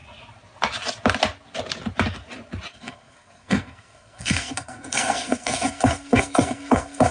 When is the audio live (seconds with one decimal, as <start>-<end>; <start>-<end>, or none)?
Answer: 0.0-2.7